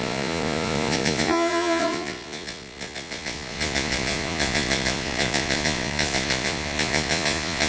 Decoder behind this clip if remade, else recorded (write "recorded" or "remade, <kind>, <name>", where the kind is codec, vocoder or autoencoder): remade, vocoder, Vocos